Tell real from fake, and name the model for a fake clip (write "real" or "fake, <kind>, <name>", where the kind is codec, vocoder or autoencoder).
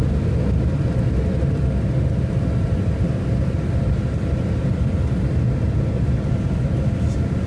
real